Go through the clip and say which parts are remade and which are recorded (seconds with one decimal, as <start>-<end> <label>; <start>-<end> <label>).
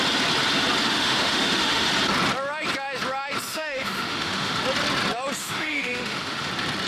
0.0-0.8 recorded; 0.8-1.9 remade; 1.9-3.5 recorded; 3.5-4.6 remade; 4.6-5.4 recorded; 5.4-6.5 remade; 6.5-6.9 recorded